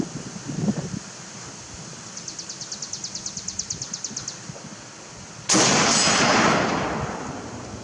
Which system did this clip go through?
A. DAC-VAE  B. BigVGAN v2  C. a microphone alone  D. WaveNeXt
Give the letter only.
C